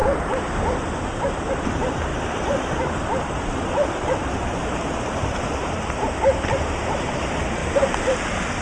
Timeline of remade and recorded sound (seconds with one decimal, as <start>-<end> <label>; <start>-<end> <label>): 0.0-1.5 recorded; 1.5-7.6 remade; 7.6-8.6 recorded